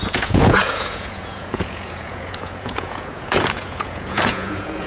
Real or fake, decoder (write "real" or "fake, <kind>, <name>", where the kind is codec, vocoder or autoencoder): fake, vocoder, Vocos